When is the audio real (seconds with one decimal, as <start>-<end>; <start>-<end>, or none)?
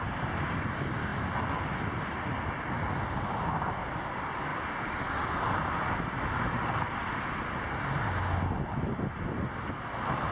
0.0-10.3